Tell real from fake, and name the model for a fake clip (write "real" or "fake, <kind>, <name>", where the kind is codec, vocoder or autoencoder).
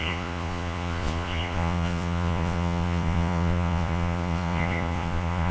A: fake, vocoder, Vocos